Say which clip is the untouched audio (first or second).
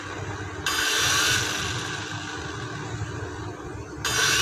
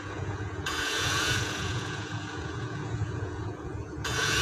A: first